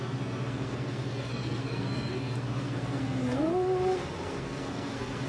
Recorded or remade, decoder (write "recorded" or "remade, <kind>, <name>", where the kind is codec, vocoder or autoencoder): remade, codec, SNAC